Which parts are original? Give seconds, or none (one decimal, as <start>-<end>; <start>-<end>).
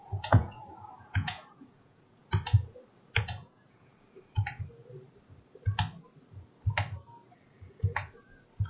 2.2-3.2; 3.9-8.7